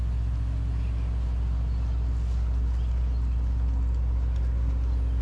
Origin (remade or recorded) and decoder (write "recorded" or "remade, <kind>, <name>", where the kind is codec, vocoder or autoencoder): recorded